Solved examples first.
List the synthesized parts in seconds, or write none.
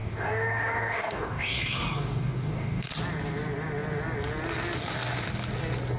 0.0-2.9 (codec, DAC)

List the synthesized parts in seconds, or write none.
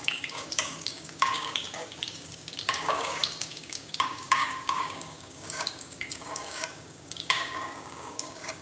0.0-8.6 (codec, DAC)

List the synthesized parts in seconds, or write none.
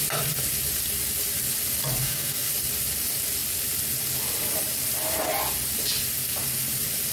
2.0-2.5 (codec, DAC)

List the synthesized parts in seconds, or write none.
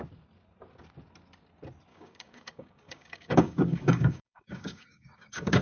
1.9-5.6 (codec, DAC)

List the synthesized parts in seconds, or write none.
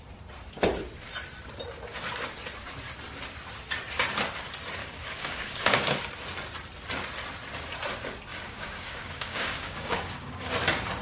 4.8-6.0 (codec, DAC); 8.3-10.5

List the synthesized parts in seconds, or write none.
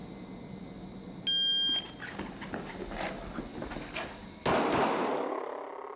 none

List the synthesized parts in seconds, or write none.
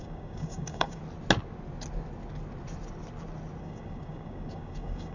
0.0-1.0 (codec, DAC); 3.6-5.1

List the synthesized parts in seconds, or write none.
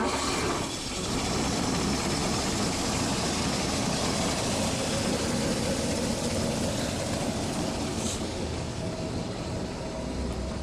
7.9-8.9 (codec, DAC)